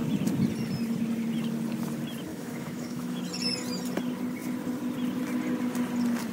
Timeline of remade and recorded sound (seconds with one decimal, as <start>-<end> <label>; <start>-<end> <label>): 0.0-2.3 recorded; 2.3-3.2 remade; 3.2-6.3 recorded